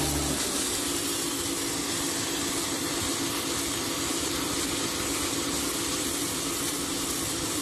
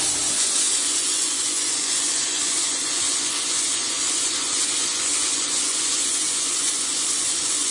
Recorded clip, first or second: first